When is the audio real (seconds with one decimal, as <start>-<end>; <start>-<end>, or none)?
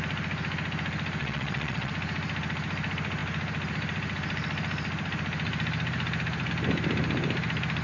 0.0-1.2; 1.9-7.8